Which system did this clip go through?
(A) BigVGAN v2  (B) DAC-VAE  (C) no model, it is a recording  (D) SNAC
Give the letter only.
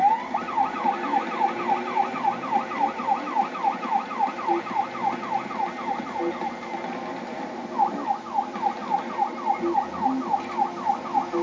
C